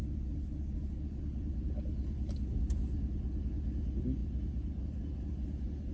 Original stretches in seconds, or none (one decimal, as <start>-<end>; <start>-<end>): 0.0-5.9